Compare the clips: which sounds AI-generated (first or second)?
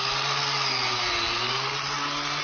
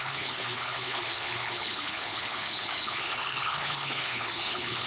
second